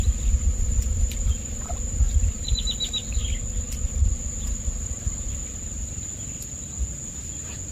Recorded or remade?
recorded